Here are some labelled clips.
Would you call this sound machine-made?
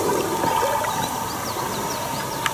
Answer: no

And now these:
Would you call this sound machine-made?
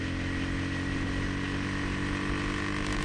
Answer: no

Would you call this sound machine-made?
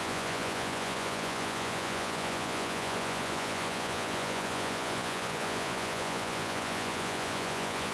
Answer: yes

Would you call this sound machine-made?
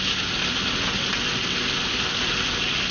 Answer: no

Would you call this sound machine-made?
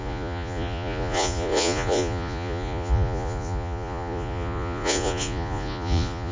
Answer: yes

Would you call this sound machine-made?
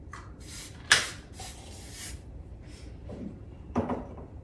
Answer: yes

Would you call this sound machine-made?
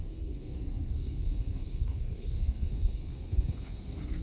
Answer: yes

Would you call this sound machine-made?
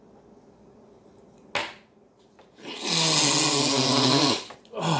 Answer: no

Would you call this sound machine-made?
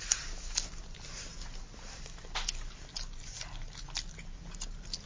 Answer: no